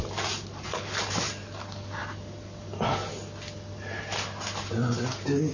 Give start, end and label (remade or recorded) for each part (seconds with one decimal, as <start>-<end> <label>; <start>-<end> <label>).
0.0-5.5 recorded